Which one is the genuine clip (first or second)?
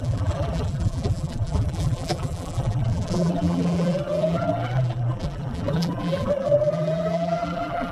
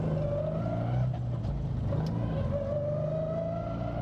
second